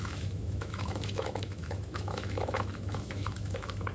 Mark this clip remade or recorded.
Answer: remade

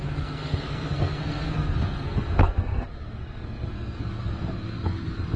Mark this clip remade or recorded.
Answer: remade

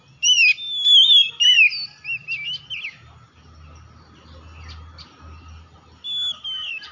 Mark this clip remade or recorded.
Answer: recorded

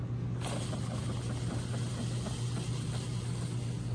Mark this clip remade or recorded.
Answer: recorded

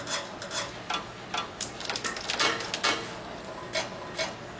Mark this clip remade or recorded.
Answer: recorded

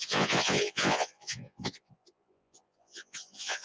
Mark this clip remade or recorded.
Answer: remade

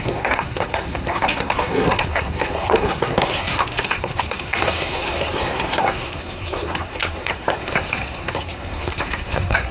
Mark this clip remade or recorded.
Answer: remade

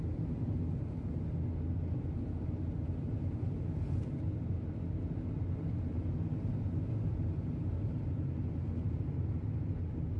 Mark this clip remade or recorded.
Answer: recorded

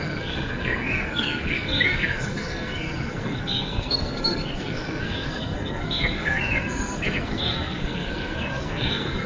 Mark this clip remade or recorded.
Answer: remade